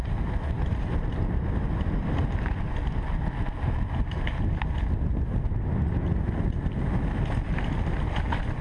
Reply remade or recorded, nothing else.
recorded